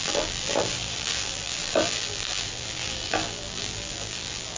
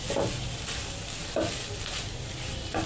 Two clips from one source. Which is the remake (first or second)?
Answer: first